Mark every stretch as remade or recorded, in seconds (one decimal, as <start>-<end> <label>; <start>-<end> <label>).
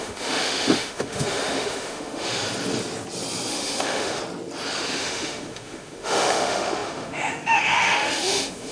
0.0-2.4 remade; 2.4-3.5 recorded; 3.5-4.2 remade; 4.2-4.8 recorded; 4.8-8.7 remade